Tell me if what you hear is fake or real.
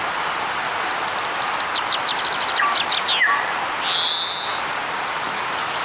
real